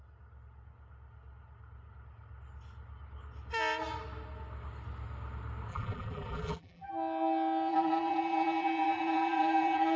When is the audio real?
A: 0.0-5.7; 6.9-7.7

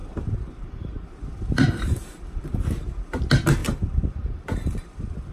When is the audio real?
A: 3.2-3.6

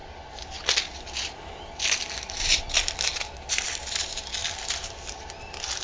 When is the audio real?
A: 0.0-3.5